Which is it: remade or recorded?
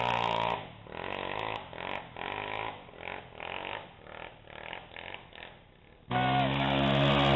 recorded